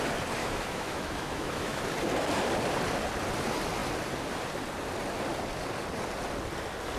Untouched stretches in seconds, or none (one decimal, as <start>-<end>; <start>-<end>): 0.0-0.4; 1.8-7.0